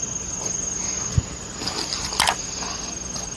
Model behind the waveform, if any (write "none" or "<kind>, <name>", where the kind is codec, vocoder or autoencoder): none